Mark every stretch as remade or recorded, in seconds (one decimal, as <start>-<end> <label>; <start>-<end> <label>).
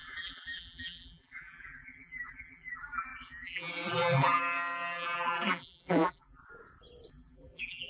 0.0-6.4 remade; 6.4-7.1 recorded; 7.1-7.9 remade